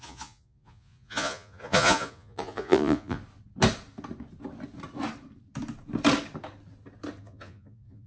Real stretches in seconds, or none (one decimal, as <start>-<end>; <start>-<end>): 3.2-7.2